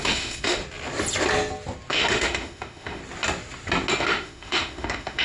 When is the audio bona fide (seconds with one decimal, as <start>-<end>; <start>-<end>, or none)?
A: 0.6-1.9; 3.0-4.0

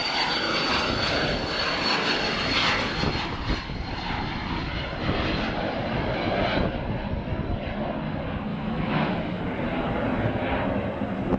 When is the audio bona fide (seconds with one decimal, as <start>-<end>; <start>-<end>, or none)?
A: 0.0-8.5; 9.4-11.4

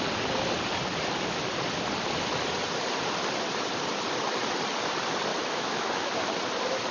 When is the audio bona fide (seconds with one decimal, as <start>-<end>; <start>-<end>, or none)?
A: 0.0-5.3; 6.1-6.9

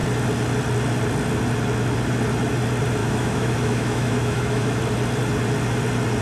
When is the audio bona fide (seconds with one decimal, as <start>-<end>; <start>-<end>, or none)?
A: 0.0-3.0; 4.8-6.2

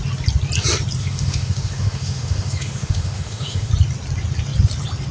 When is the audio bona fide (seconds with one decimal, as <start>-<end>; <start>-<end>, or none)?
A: 0.0-1.0; 3.7-5.1

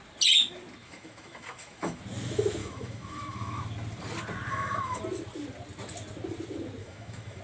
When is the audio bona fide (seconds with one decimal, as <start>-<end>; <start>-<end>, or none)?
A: 0.0-0.8; 2.0-2.6; 3.6-4.5; 5.0-6.8